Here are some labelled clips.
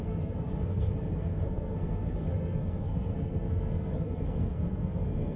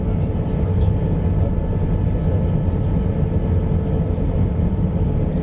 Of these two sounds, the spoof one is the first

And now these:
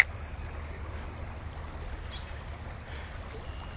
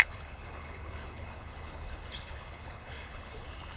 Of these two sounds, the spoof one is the second